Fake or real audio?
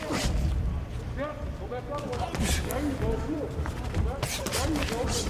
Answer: fake